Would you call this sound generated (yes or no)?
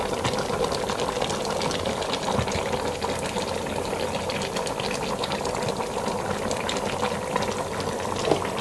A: no